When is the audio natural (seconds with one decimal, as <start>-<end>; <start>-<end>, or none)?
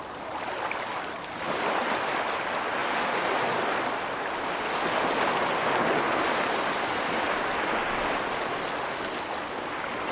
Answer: 0.0-10.1